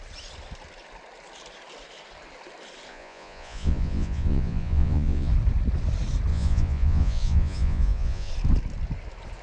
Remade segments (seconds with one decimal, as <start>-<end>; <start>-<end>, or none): 2.9-5.3; 6.3-8.3